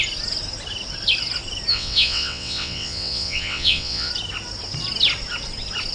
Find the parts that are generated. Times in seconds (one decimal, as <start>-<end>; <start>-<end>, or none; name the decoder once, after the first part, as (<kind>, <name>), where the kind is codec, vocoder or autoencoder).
1.7-4.1 (vocoder, WaveNeXt)